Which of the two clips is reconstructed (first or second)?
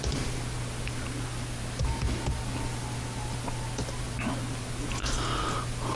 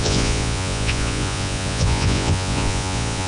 second